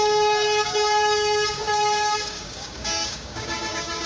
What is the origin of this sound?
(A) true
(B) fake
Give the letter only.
B